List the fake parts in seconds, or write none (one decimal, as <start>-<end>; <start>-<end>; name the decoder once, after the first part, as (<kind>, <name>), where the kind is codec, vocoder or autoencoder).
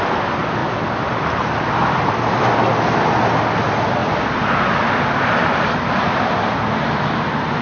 0.6-2.4 (vocoder, BigVGAN v2)